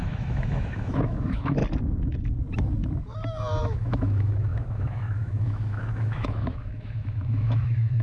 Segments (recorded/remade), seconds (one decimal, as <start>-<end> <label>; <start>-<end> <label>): 0.0-1.6 remade; 1.6-3.6 recorded; 3.6-8.0 remade